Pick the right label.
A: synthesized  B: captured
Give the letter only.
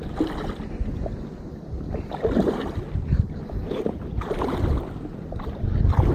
B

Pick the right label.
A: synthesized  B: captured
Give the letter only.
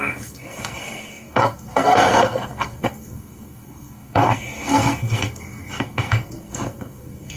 A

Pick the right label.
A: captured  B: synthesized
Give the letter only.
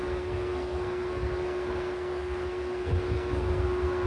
B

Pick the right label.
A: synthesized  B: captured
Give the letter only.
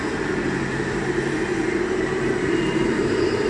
A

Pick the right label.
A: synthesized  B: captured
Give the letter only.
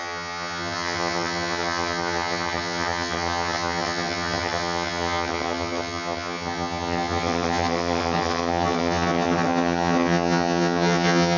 A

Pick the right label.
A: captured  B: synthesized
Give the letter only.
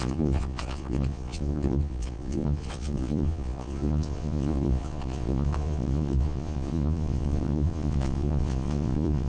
B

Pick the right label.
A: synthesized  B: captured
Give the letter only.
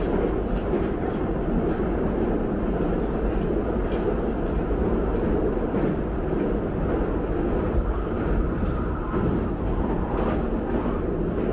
B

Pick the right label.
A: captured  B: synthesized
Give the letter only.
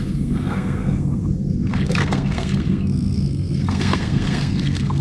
B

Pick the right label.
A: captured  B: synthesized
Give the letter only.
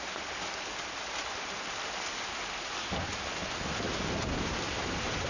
A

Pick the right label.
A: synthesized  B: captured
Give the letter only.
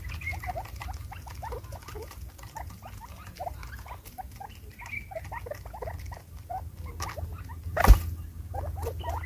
B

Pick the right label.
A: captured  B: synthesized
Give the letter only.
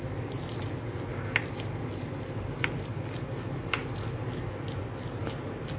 A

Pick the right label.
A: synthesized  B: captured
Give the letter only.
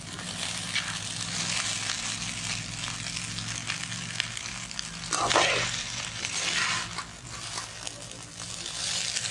B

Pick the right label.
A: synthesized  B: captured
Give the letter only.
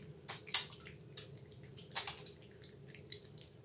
B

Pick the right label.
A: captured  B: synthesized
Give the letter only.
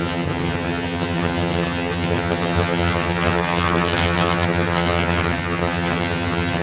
B